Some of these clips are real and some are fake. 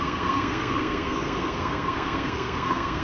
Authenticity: fake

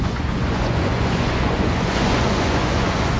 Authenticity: fake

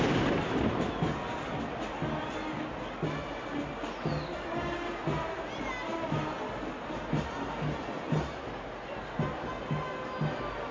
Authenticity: real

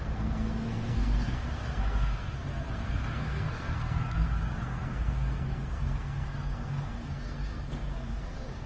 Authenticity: fake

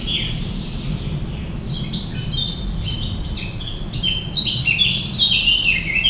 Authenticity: real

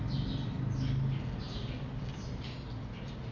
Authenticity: real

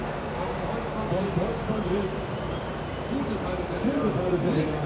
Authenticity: real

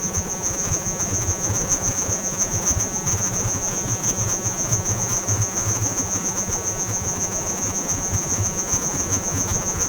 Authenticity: fake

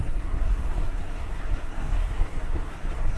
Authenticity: fake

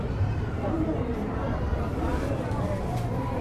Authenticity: fake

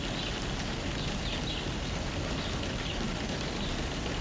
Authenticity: real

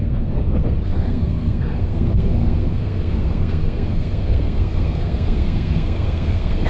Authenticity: fake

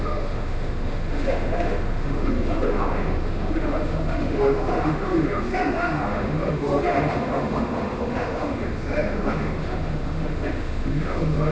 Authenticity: fake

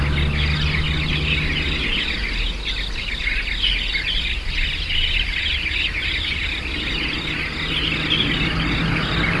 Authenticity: real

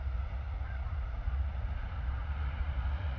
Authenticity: fake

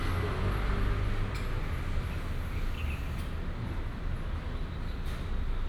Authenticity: real